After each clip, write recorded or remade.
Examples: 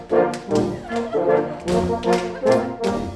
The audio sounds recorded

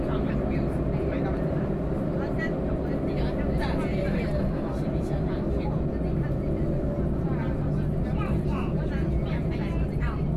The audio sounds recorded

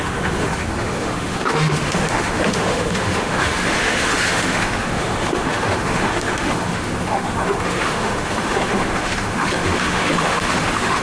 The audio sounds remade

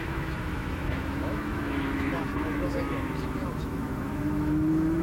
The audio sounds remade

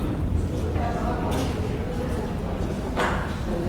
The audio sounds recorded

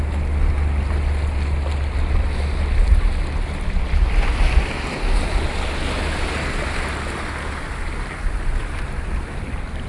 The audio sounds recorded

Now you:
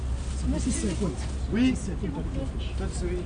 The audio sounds recorded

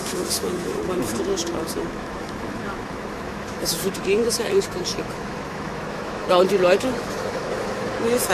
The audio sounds remade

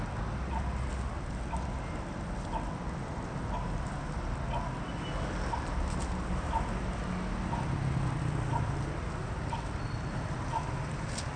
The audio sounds recorded